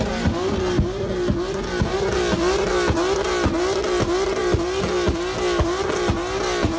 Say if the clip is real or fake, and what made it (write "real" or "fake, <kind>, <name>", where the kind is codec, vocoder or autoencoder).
real